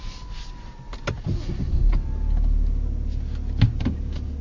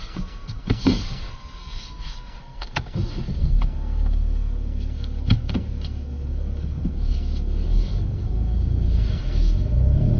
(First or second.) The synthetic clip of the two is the second